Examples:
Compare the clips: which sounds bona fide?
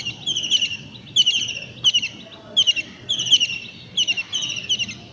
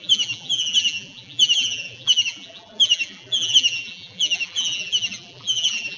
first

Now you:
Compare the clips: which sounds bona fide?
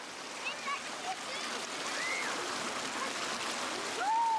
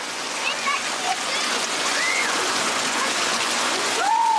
first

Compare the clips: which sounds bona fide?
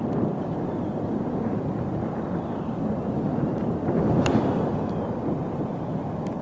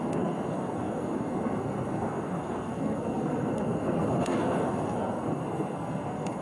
first